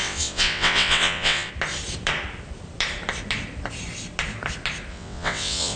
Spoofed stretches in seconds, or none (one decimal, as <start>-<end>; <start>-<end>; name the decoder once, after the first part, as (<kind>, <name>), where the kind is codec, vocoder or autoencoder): 0.0-1.5 (vocoder, WaveNeXt); 4.9-5.8